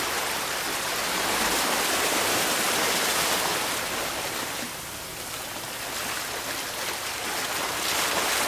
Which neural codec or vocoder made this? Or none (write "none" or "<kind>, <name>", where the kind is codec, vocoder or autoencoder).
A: none